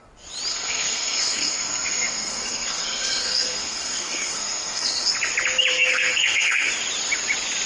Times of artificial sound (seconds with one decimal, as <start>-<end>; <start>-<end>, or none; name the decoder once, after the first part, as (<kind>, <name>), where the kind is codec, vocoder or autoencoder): 0.5-5.1 (codec, SNAC); 5.7-6.7